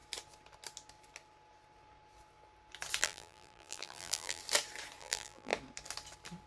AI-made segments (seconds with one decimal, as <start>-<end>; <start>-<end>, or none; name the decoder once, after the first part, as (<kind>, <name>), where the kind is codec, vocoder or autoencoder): 3.0-4.4 (vocoder, BigVGAN v2); 5.0-5.5